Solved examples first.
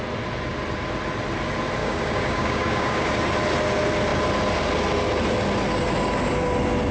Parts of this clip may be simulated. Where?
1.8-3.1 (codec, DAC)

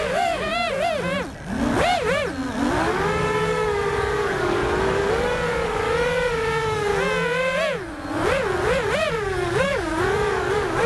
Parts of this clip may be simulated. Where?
0.0-0.5 (codec, DAC); 2.8-4.6; 5.1-6.9; 9.1-10.9

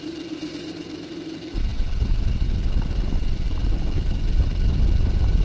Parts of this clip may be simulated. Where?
none

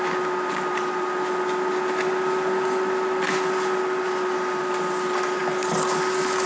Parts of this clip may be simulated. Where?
none